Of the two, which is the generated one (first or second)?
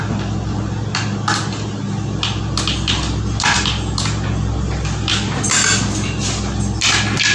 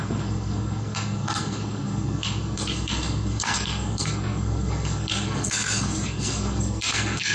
second